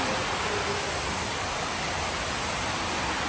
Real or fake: real